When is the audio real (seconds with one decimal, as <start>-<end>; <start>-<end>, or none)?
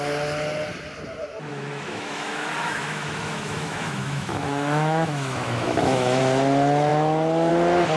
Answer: 0.0-1.5; 6.2-8.0